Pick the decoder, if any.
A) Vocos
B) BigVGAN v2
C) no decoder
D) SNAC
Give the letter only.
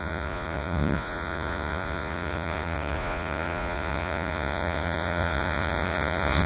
A